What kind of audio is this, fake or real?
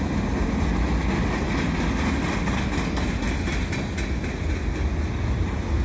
real